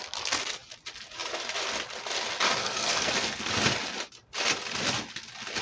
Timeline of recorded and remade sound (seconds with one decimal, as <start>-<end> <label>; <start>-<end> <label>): 0.0-2.6 recorded; 2.6-3.5 remade; 3.5-5.6 recorded